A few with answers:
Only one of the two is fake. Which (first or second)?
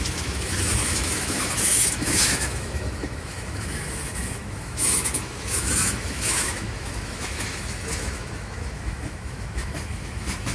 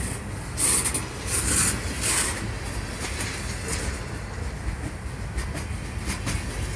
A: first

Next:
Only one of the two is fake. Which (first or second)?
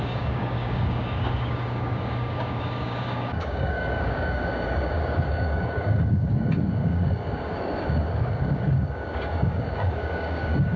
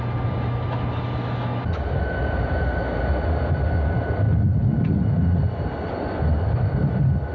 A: first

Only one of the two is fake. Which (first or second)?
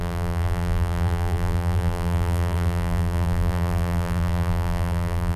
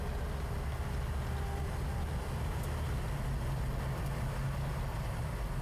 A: first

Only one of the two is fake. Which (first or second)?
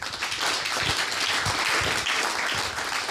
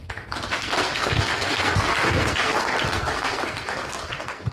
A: second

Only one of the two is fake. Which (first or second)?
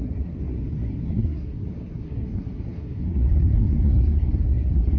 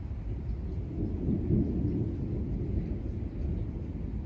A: first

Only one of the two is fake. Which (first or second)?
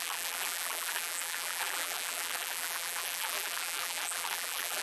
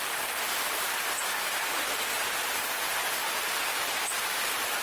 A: first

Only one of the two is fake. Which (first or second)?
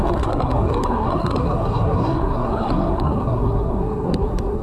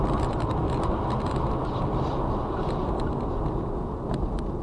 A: first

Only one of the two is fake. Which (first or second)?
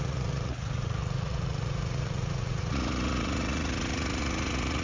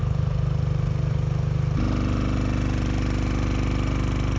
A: first